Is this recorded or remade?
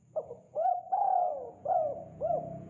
remade